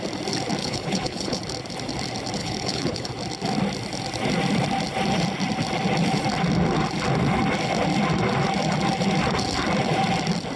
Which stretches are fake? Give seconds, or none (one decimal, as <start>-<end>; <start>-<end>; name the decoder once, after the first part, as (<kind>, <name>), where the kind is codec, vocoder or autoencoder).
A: 0.6-1.4 (codec, HILCodec); 2.4-3.1